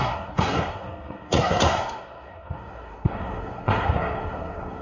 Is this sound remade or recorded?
remade